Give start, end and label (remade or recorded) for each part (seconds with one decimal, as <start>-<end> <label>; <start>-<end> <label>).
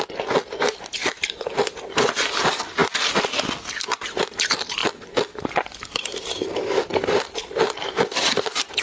0.0-1.0 recorded; 1.0-1.7 remade; 1.7-8.8 recorded